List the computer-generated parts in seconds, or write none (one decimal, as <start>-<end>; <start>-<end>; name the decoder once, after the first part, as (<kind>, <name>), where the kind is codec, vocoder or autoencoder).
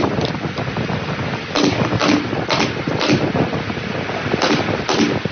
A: none